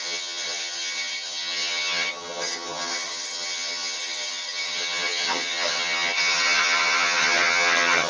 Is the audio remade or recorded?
remade